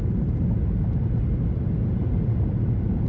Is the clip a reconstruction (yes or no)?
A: yes